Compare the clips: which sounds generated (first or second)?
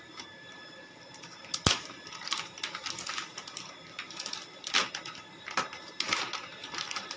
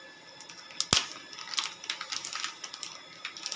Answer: first